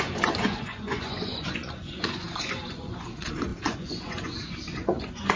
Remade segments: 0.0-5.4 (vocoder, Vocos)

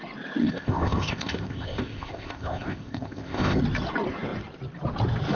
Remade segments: 0.4-3.6 (codec, ZipCodec)

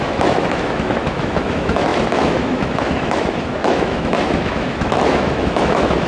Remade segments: 0.0-6.1 (autoencoder, DAC-VAE)

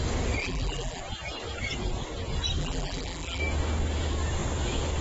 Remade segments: 0.4-1.0 (vocoder, BigVGAN v2); 2.6-3.4

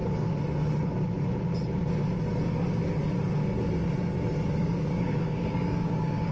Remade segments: 4.6-6.3 (codec, DAC)

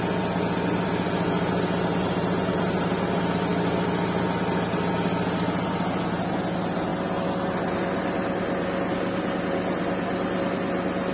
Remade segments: none

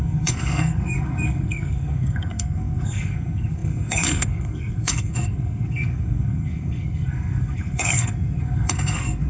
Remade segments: 0.0-9.3 (codec, SNAC)

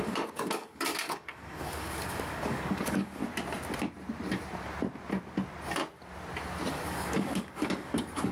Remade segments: 0.0-3.2 (codec, DAC); 6.7-8.3